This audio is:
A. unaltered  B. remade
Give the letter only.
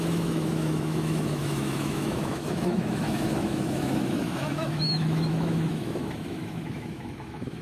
B